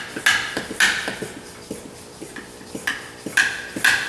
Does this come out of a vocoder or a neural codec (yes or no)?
no